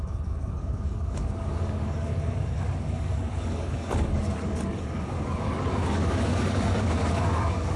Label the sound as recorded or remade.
remade